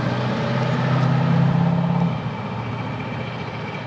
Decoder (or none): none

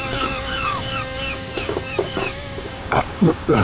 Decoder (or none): codec, DAC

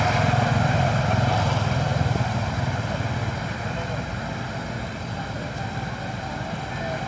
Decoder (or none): none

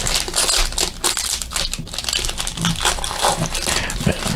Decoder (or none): none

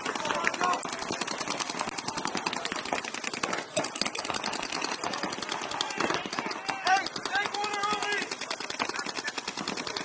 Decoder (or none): none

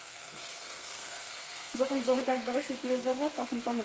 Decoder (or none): codec, SNAC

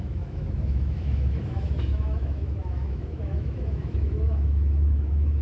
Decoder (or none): autoencoder, DAC-VAE